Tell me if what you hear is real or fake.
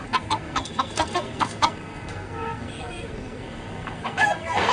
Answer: fake